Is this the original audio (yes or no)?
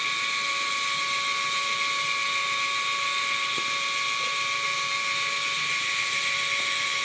yes